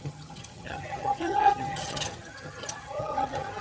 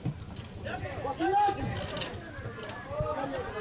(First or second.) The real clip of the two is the second